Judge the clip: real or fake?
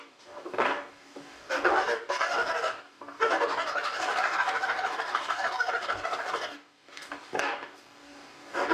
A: fake